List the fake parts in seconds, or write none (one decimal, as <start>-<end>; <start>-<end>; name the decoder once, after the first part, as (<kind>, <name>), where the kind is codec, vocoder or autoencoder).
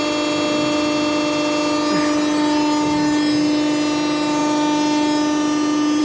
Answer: none